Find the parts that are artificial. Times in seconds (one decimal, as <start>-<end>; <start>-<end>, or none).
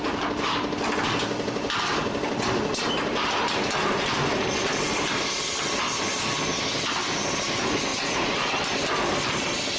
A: 7.9-8.6